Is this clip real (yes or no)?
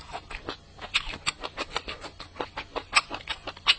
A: yes